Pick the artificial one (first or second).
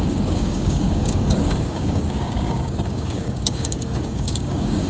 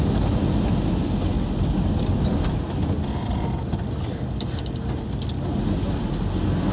first